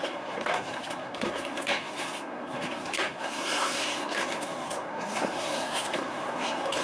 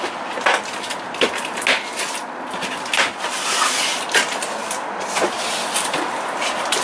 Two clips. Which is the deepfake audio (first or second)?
first